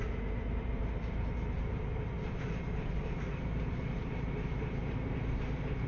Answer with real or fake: fake